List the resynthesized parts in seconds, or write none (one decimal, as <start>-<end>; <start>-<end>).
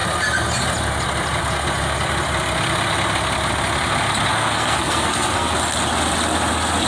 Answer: 4.3-5.5